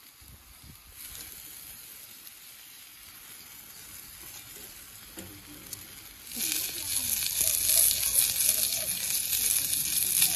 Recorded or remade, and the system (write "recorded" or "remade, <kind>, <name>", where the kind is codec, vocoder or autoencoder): recorded